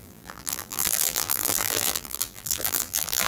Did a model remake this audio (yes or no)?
yes